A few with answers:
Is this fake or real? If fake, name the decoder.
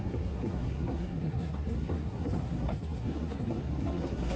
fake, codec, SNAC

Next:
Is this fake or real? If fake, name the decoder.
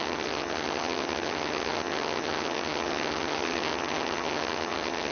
fake, vocoder, HiFi-GAN